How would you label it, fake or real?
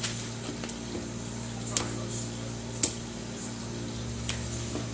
real